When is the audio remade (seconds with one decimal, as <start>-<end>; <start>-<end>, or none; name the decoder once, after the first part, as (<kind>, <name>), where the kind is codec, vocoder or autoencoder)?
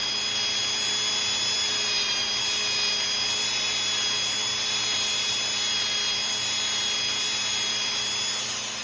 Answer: none